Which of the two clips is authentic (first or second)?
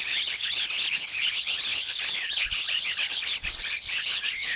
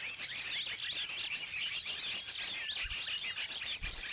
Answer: second